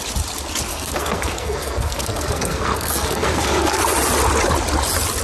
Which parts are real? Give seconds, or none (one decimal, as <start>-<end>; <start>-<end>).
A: 0.0-0.7; 3.8-5.2